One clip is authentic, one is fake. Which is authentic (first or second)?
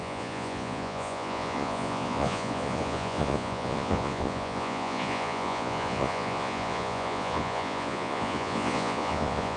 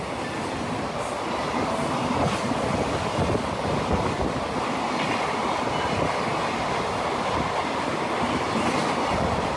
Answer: second